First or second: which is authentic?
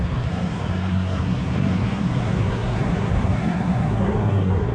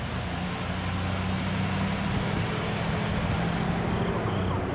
second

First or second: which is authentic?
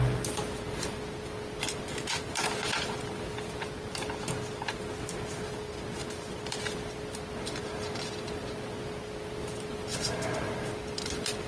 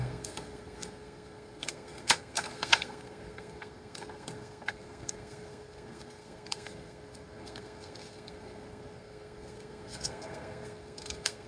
first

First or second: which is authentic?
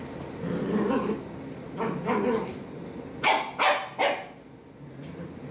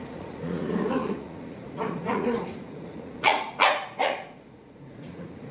first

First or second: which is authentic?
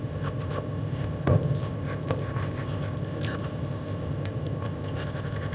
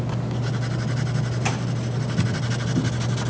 second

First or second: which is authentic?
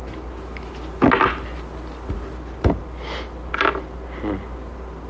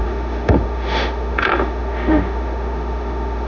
first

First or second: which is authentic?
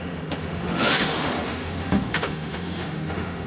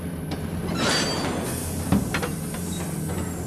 second